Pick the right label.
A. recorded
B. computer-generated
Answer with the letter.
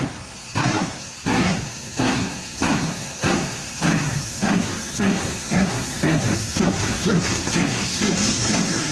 B